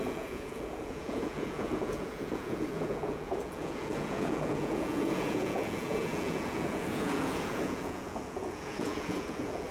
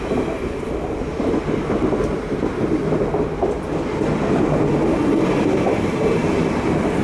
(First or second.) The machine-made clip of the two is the first